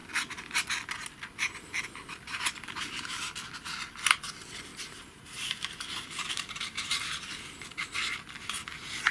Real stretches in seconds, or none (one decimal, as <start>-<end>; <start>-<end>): 0.0-4.7; 7.1-9.1